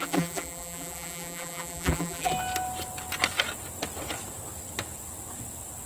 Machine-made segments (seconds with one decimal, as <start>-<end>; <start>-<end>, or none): 0.0-2.3